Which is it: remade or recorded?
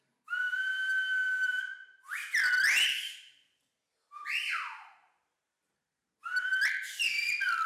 recorded